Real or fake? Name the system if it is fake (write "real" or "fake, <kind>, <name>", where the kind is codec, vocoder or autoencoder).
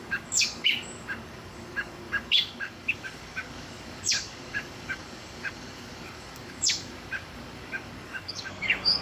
fake, codec, DAC